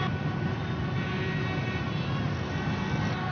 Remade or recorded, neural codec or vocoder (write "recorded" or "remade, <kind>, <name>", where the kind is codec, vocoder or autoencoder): recorded